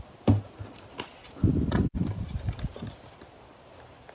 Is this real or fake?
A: real